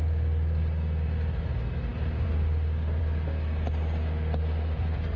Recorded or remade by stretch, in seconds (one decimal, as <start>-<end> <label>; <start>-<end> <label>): 0.0-5.2 recorded